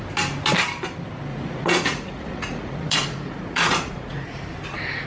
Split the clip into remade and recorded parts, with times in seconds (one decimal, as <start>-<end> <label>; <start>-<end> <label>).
0.0-1.3 recorded; 1.3-4.4 remade; 4.4-5.1 recorded